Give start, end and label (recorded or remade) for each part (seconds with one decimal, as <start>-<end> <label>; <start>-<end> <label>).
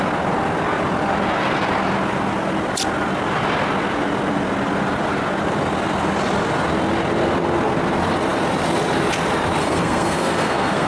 0.0-9.6 recorded; 9.6-10.9 remade